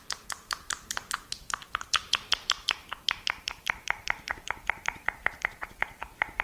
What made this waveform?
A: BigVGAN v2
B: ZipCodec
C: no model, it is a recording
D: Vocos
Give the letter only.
A